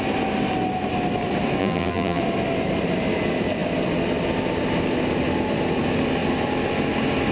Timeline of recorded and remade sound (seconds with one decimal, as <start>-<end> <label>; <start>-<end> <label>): 0.0-1.6 recorded; 1.6-2.2 remade; 2.2-7.3 recorded